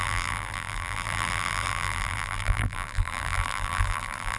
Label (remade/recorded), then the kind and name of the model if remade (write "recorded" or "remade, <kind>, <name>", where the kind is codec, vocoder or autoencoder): remade, vocoder, BigVGAN v2